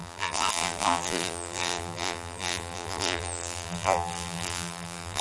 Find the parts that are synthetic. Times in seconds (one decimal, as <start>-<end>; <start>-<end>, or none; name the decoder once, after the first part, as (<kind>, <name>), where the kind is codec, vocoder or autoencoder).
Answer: 0.0-5.2 (vocoder, BigVGAN v2)

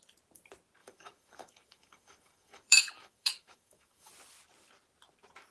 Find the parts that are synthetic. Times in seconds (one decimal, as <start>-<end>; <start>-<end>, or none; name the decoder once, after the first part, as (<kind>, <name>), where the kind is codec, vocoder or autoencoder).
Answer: 0.8-4.1 (autoencoder, DAC-VAE)

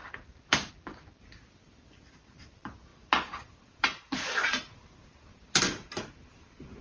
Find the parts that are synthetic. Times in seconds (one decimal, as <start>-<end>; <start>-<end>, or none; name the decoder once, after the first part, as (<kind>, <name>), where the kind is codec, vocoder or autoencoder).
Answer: 0.0-0.7 (vocoder, BigVGAN v2); 2.9-5.6